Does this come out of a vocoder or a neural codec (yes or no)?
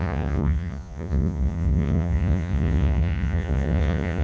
yes